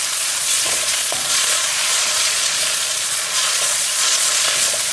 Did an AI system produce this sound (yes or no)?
yes